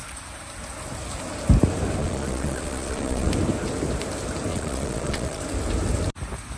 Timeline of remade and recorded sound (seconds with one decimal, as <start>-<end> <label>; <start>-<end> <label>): 0.0-2.0 recorded; 2.0-3.3 remade; 3.3-4.5 recorded; 4.5-5.4 remade; 5.4-6.6 recorded